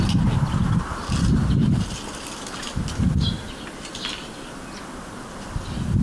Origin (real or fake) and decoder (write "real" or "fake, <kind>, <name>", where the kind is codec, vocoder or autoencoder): fake, vocoder, BigVGAN v2